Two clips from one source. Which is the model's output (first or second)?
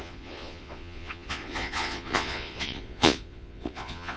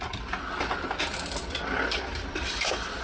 first